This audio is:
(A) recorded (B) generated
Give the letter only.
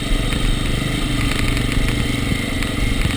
A